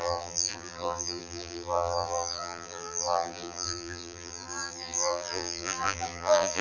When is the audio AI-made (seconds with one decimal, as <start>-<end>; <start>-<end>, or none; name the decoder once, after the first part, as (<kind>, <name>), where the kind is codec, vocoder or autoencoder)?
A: 0.0-6.6 (vocoder, BigVGAN v2)

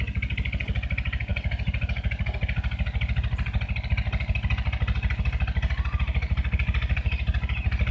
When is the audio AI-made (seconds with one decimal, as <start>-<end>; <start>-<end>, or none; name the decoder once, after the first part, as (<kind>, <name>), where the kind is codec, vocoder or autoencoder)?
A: none

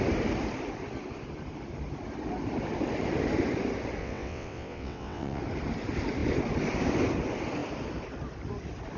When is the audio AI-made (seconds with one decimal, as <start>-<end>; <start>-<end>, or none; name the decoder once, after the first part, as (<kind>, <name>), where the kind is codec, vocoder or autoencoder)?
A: 4.0-5.4 (vocoder, WaveNeXt)

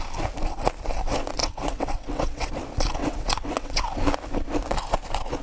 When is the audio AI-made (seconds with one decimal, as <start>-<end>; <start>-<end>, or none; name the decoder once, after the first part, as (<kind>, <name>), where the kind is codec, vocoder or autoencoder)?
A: 1.4-2.5 (vocoder, WaveNeXt); 3.0-3.8

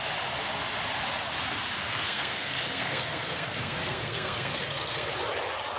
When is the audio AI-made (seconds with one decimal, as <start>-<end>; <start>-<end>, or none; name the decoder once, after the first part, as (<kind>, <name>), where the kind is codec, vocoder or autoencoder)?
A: 1.9-5.1 (codec, SNAC)

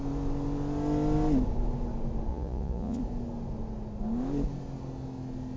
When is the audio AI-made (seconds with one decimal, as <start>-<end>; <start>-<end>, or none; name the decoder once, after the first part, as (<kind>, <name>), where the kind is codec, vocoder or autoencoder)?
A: 2.3-3.0 (vocoder, Vocos)

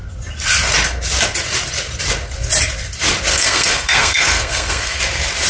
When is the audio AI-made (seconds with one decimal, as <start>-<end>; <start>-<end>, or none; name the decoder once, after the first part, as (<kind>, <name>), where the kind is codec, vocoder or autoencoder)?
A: 3.3-5.0 (codec, SNAC)